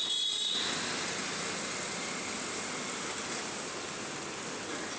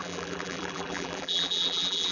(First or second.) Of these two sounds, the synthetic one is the second